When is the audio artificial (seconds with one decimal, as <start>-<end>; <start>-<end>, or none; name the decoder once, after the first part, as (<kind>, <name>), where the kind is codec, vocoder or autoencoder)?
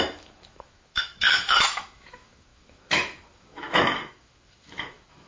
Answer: 0.0-5.3 (autoencoder, DAC-VAE)